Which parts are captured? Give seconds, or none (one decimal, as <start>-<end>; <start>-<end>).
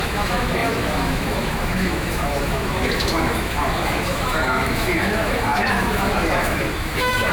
none